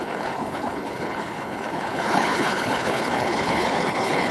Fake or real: fake